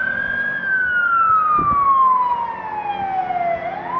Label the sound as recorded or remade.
recorded